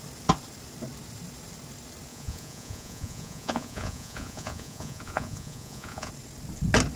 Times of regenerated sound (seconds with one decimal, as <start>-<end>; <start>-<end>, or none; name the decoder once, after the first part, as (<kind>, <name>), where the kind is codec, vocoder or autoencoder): 2.1-6.1 (vocoder, Vocos)